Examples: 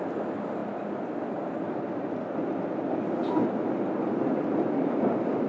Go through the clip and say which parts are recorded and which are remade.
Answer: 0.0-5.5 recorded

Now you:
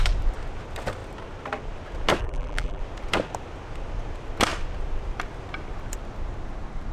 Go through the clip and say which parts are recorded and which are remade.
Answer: 0.0-2.2 recorded; 2.2-2.8 remade; 2.8-6.9 recorded

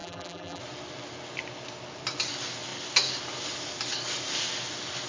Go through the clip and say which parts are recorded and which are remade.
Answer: 0.0-0.6 remade; 0.6-5.1 recorded

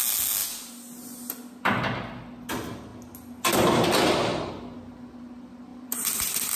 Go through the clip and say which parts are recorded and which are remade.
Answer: 0.0-5.7 recorded; 5.7-6.6 remade

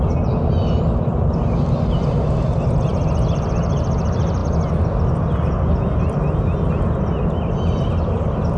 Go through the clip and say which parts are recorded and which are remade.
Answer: 0.0-8.6 recorded

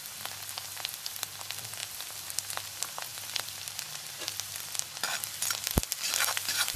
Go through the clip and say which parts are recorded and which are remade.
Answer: 0.0-1.8 recorded; 1.8-2.5 remade; 2.5-3.1 recorded; 3.1-5.3 remade; 5.3-6.8 recorded

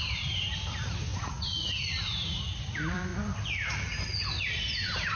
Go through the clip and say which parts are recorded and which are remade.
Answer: 0.0-1.1 remade; 1.1-1.8 recorded; 1.8-3.1 remade; 3.1-4.4 recorded; 4.4-5.2 remade